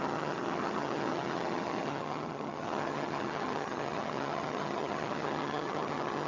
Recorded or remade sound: remade